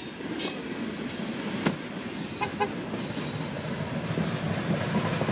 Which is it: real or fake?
real